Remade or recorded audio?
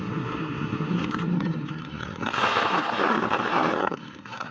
remade